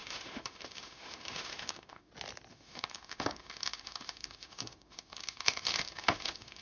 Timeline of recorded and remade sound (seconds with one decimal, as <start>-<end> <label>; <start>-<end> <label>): 0.0-2.1 remade; 2.1-2.5 recorded; 2.5-6.6 remade